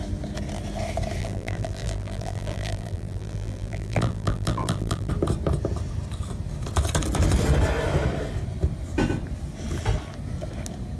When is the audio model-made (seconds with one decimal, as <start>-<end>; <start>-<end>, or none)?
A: 1.2-5.1